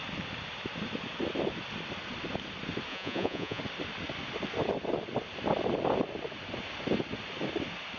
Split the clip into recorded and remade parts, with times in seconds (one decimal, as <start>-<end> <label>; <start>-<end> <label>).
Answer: 0.0-2.9 recorded; 2.9-3.6 remade; 3.6-8.0 recorded